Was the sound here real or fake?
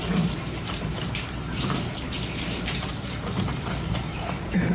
fake